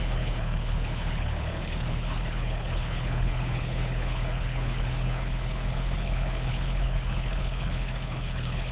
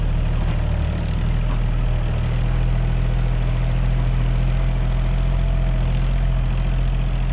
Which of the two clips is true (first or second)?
second